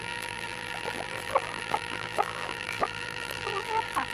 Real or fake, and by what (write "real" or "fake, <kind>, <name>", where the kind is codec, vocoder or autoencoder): fake, vocoder, BigVGAN v2